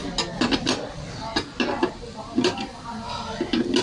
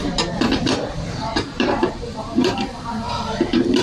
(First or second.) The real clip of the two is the first